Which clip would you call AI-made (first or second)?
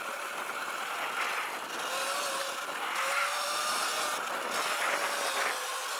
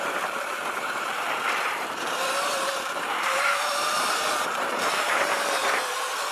second